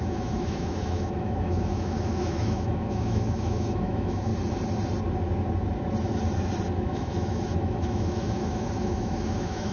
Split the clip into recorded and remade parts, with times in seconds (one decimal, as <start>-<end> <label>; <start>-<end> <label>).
0.0-4.3 remade; 4.3-6.8 recorded; 6.8-9.7 remade